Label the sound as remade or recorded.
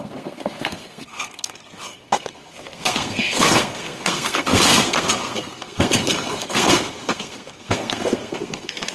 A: remade